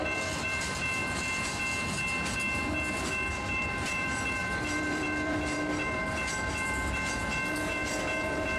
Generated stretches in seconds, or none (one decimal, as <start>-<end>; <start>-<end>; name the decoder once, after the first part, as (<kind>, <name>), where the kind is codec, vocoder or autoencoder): 0.0-1.0 (vocoder, BigVGAN v2); 2.9-8.6

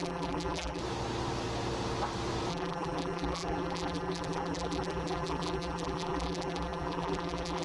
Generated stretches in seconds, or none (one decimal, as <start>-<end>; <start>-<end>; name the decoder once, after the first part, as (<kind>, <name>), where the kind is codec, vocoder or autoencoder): 0.0-0.8 (vocoder, BigVGAN v2); 2.5-7.6

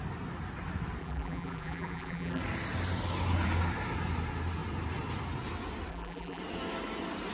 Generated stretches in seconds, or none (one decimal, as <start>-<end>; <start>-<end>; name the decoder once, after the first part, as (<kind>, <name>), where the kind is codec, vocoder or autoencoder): 1.0-2.4 (vocoder, BigVGAN v2); 5.9-6.4

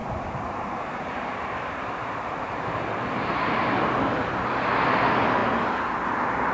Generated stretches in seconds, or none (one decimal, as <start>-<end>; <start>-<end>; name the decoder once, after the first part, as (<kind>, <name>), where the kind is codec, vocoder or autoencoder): 0.0-3.9 (vocoder, BigVGAN v2)

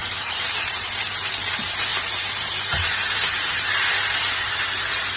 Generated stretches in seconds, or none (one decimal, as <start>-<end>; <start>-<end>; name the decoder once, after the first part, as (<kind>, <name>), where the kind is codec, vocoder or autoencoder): 0.0-5.2 (vocoder, BigVGAN v2)